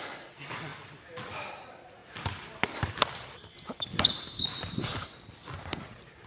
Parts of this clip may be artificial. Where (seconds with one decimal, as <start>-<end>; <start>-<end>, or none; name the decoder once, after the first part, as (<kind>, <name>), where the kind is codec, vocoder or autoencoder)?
0.7-1.5 (vocoder, BigVGAN v2); 2.0-5.8

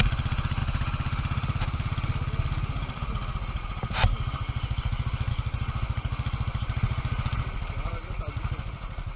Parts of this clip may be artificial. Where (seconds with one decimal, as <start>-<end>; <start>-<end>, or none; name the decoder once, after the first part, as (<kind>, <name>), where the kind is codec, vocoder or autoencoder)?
none

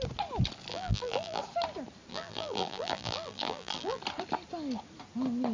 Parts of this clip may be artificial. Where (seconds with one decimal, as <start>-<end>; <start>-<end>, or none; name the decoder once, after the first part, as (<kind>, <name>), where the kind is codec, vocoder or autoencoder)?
0.7-1.4 (vocoder, BigVGAN v2); 2.1-4.0

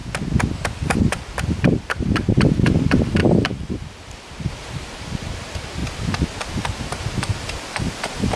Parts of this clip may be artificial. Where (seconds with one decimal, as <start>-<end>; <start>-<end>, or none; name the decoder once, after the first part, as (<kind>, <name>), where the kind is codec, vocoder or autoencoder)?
1.0-5.8 (vocoder, BigVGAN v2); 6.6-8.4

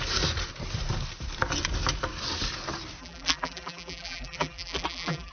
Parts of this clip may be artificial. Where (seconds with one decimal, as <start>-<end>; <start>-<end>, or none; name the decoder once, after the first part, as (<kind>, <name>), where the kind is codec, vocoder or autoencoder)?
3.0-5.3 (vocoder, BigVGAN v2)

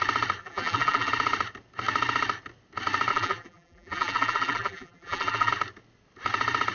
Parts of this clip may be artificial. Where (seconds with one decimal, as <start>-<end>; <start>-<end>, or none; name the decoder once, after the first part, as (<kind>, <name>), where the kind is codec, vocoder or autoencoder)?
0.4-1.1 (vocoder, BigVGAN v2); 3.1-5.5

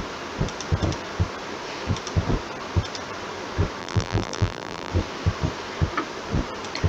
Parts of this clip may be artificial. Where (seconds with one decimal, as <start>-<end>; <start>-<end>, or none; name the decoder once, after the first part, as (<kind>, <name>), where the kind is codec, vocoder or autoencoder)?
3.8-4.9 (vocoder, BigVGAN v2)

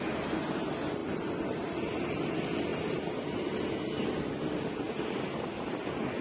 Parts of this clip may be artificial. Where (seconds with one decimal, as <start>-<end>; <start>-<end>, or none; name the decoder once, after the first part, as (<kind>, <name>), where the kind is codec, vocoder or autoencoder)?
none